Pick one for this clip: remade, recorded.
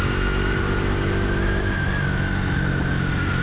recorded